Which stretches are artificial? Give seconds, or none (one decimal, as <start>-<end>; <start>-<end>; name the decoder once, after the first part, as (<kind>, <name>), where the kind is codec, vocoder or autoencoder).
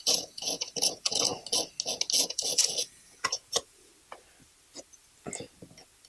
0.0-1.3 (vocoder, Vocos); 2.2-3.9